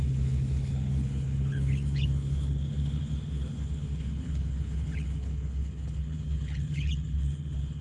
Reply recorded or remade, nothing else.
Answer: remade